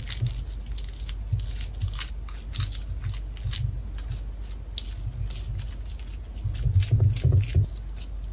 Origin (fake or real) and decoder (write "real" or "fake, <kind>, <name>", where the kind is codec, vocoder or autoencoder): real